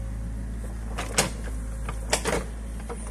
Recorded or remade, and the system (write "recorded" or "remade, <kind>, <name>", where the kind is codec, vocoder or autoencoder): recorded